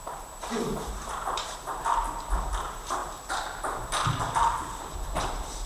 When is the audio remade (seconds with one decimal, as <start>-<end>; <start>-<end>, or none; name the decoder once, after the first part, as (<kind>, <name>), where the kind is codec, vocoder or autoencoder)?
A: 0.0-1.7 (vocoder, BigVGAN v2); 2.6-3.0